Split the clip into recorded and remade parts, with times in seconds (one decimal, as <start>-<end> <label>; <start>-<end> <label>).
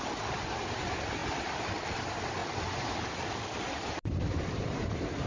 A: 0.0-5.3 recorded